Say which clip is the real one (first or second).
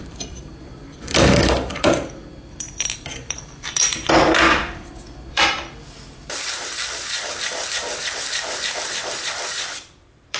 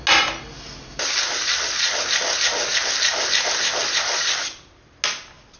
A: second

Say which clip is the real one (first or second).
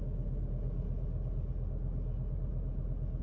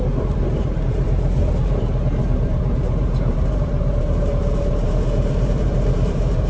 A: first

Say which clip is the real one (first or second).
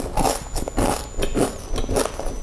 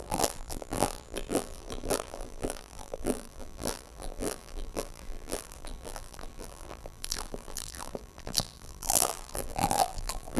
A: first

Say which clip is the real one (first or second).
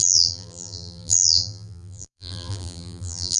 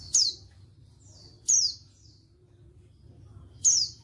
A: second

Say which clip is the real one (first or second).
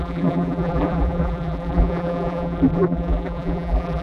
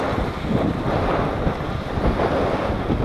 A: second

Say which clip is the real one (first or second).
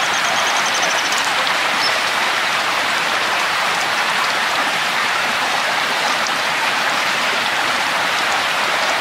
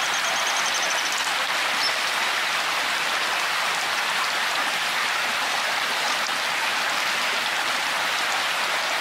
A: second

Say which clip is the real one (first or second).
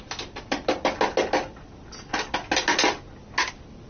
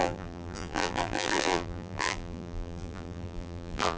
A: first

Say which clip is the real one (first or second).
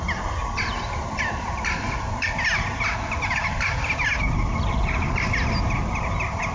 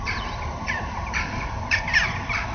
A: first